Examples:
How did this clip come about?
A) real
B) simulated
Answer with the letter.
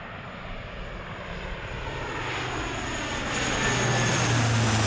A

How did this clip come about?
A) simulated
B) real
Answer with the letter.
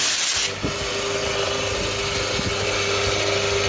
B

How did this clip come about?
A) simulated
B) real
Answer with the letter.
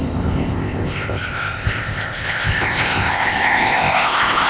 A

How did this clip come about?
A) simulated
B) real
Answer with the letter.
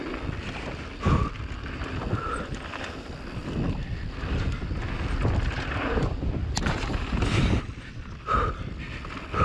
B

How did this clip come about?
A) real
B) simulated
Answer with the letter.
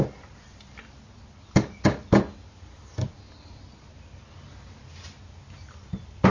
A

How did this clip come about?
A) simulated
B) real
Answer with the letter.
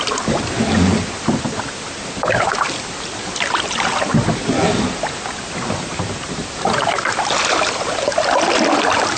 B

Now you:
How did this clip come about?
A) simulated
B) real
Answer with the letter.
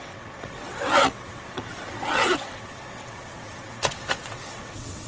A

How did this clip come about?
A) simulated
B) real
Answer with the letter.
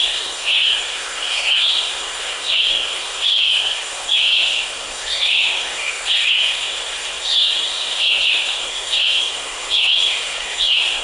A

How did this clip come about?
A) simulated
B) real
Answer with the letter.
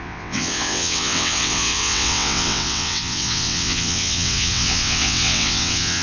A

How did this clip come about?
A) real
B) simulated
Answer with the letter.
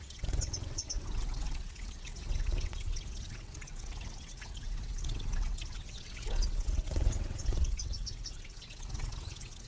B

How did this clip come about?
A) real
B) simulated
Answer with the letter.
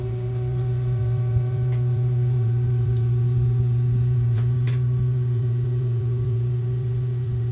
B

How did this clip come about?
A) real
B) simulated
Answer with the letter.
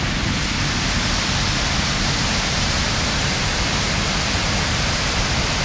A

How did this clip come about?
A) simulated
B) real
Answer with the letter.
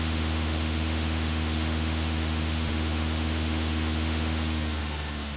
A